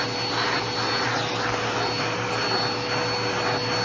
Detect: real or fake real